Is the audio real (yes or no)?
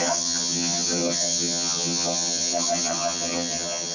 no